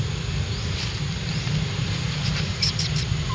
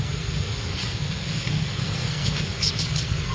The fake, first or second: second